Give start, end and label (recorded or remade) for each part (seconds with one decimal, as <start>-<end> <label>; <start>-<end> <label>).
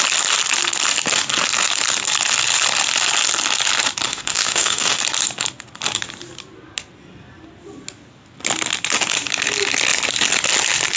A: 0.0-4.1 recorded; 4.1-5.0 remade; 5.0-11.0 recorded